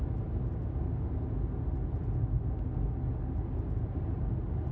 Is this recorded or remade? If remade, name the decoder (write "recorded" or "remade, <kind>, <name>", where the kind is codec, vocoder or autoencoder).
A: recorded